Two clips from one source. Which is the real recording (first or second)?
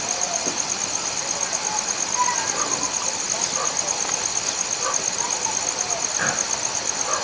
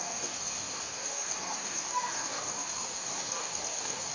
first